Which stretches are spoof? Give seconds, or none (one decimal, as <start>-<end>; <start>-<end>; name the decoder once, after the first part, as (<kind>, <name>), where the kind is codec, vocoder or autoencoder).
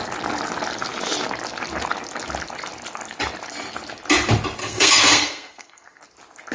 4.6-6.0 (codec, SNAC)